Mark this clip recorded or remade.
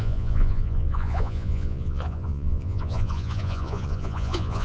remade